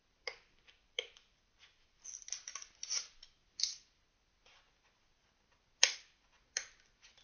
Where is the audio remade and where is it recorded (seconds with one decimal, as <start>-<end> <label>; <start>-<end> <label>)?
0.0-7.2 recorded